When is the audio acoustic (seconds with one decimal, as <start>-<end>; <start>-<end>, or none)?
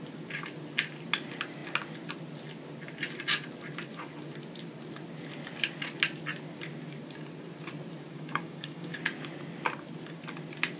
0.0-8.1; 9.0-10.8